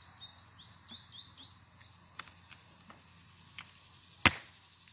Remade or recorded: recorded